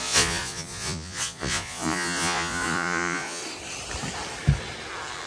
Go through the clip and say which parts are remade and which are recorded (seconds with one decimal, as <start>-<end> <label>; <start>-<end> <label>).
0.0-3.4 remade; 3.4-5.3 recorded